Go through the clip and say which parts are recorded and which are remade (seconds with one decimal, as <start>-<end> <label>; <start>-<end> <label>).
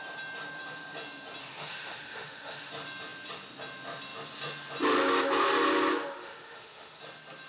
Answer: 0.0-1.4 recorded; 1.4-2.7 remade; 2.7-6.1 recorded; 6.1-7.0 remade; 7.0-7.5 recorded